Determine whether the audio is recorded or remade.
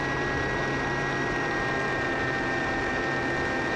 remade